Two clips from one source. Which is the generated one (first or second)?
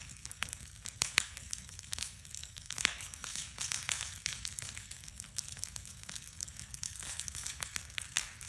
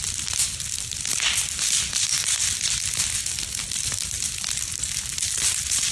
first